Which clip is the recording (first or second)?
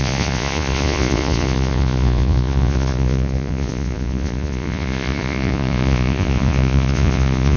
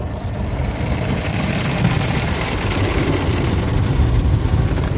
second